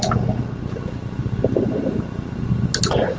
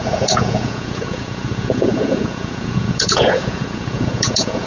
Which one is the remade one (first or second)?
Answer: second